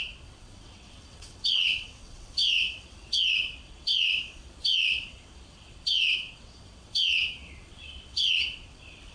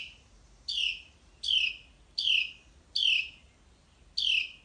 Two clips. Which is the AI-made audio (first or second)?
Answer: first